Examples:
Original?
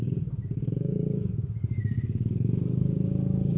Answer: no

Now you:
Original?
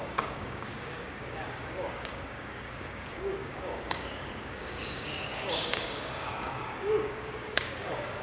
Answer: no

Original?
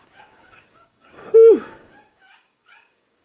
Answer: no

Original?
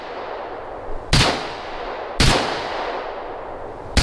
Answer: yes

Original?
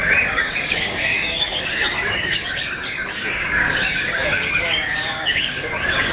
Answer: no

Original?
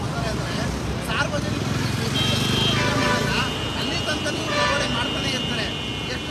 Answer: yes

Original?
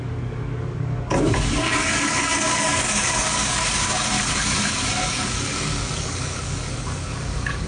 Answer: no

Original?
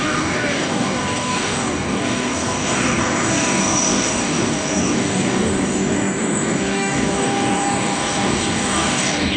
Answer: no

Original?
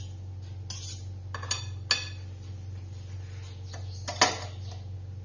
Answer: yes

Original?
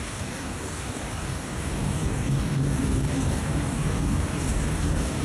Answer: no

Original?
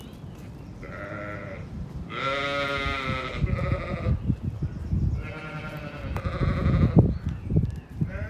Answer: yes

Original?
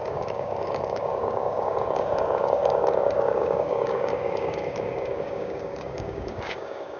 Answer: no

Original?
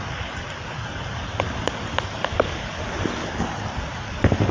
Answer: yes